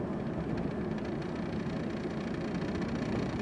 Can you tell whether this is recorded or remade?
recorded